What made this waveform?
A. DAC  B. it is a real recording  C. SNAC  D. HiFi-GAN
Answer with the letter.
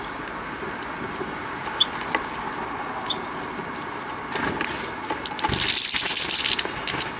B